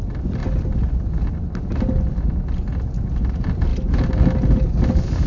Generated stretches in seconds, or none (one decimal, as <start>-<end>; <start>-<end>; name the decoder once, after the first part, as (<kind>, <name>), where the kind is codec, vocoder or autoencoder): none